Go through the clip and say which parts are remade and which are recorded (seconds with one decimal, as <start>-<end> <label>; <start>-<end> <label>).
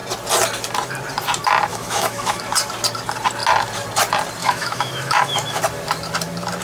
0.0-1.7 recorded; 1.7-2.4 remade; 2.4-4.4 recorded; 4.4-5.6 remade; 5.6-6.6 recorded